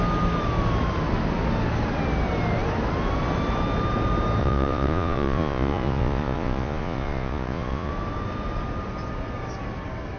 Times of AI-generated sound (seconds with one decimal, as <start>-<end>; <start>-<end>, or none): 4.4-7.9